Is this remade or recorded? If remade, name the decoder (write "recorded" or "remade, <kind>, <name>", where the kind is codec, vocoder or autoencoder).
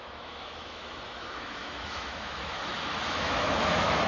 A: remade, autoencoder, DAC-VAE